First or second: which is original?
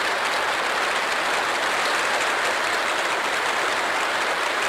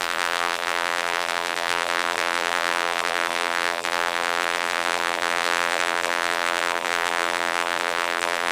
first